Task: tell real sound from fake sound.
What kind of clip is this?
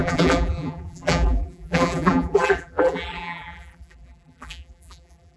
fake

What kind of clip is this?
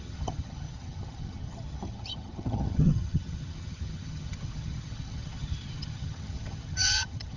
fake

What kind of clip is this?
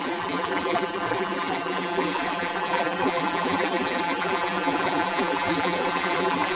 fake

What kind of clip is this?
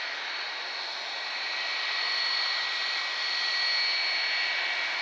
real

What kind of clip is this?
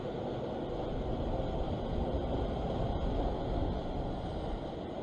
real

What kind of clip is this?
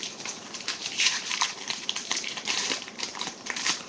fake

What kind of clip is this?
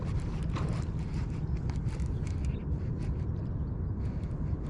real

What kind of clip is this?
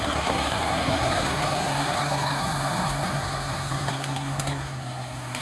fake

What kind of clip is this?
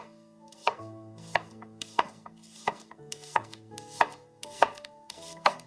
fake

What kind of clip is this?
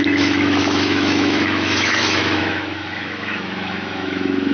fake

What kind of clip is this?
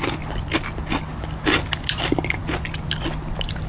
real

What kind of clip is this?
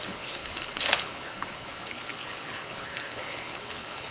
fake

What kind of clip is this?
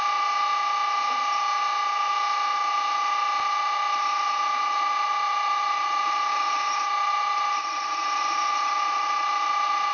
real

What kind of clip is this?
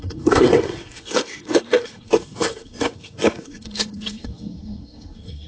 fake